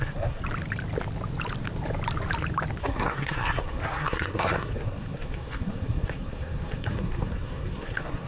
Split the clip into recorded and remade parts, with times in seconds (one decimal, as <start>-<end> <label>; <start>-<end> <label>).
0.0-0.4 remade; 0.4-2.8 recorded; 2.8-8.3 remade